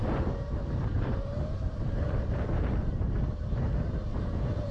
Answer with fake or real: fake